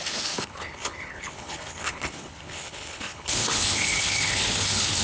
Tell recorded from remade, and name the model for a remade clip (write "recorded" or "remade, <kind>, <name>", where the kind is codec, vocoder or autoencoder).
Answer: remade, codec, HILCodec